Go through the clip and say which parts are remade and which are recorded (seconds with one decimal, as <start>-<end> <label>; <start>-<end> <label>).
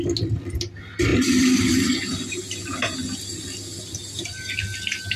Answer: 0.0-5.2 recorded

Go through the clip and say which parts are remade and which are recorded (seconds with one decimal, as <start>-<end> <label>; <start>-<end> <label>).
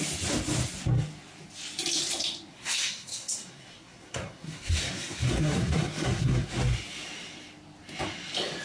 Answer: 0.0-2.5 recorded; 2.5-6.5 remade; 6.5-8.6 recorded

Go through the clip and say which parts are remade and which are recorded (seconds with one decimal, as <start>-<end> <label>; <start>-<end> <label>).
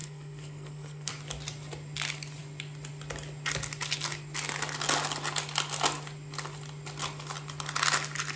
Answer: 0.0-1.1 remade; 1.1-8.4 recorded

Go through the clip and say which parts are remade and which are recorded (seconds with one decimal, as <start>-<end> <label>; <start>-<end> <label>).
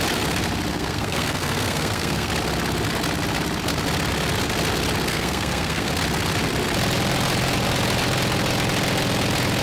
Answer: 0.0-0.7 recorded; 0.7-2.3 remade; 2.3-5.1 recorded; 5.1-5.9 remade; 5.9-9.6 recorded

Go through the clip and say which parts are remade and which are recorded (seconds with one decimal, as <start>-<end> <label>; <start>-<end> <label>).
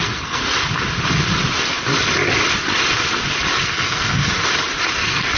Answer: 0.0-0.4 remade; 0.4-3.6 recorded; 3.6-4.3 remade; 4.3-5.0 recorded; 5.0-5.4 remade